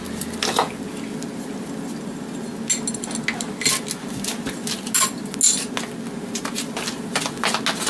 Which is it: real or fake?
real